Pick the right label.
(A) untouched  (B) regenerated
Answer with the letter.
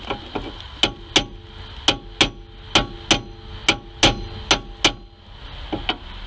A